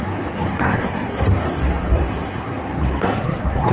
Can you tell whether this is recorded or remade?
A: remade